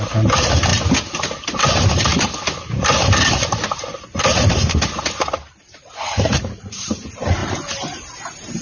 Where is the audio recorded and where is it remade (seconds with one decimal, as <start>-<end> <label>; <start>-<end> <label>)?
0.0-8.6 recorded